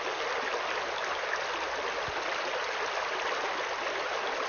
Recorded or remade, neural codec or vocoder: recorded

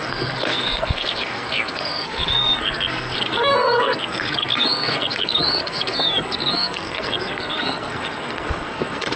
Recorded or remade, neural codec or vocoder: remade, codec, SNAC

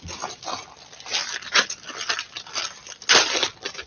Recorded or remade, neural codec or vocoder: recorded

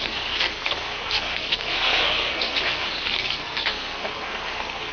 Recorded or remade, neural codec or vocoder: remade, codec, SNAC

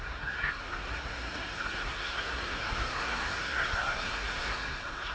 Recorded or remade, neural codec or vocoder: remade, codec, SNAC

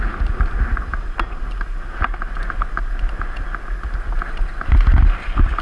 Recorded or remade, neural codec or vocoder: recorded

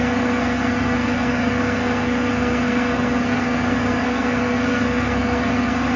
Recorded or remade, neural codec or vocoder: remade, codec, SNAC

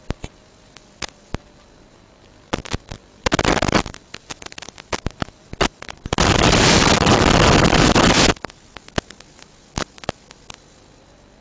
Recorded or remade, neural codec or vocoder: recorded